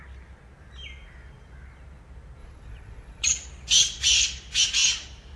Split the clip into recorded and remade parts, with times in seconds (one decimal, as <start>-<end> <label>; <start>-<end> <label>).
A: 0.0-2.4 recorded; 2.4-3.8 remade; 3.8-5.4 recorded